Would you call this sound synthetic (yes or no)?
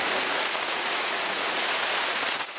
yes